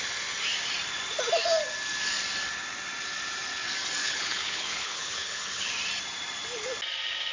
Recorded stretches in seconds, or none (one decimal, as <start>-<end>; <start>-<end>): 0.0-4.0; 5.7-7.3